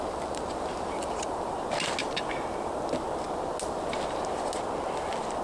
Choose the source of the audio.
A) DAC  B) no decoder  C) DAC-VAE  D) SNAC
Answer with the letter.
B